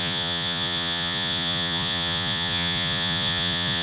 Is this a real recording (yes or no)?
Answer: no